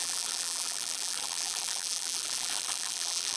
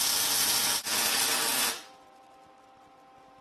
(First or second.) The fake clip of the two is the first